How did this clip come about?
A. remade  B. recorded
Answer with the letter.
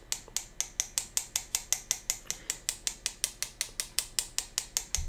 B